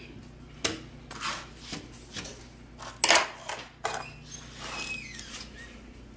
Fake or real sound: real